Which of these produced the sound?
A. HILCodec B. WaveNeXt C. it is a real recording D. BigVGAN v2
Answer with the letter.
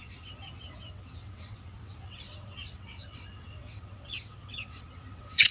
B